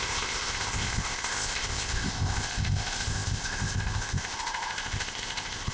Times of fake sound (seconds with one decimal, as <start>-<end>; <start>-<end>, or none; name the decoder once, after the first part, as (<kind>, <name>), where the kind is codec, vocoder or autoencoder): 0.0-5.7 (codec, ZipCodec)